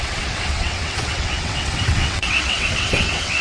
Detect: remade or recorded remade